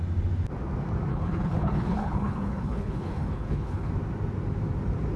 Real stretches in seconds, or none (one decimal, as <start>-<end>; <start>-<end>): 0.0-1.1; 3.9-5.2